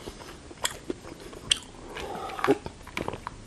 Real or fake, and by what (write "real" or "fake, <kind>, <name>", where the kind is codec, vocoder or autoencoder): real